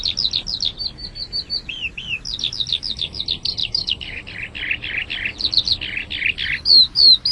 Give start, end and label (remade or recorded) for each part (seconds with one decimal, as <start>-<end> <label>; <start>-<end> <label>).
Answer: 0.0-2.7 recorded; 2.7-3.2 remade; 3.2-3.6 recorded; 3.6-4.2 remade; 4.2-7.3 recorded